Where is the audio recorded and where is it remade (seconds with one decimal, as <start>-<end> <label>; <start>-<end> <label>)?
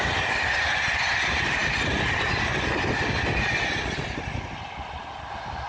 0.0-5.7 recorded